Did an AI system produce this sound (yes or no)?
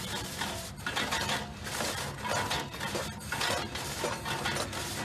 no